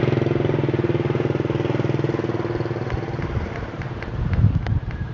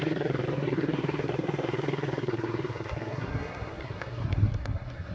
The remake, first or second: second